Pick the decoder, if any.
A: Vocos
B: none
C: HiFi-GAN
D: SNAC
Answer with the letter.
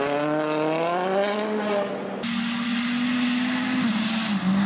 B